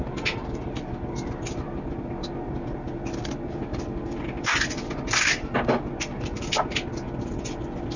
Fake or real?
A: real